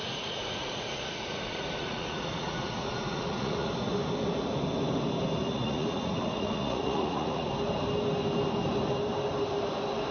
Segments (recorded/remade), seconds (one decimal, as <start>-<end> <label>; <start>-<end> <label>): 0.0-3.7 remade; 3.7-5.4 recorded; 5.4-7.5 remade; 7.5-10.1 recorded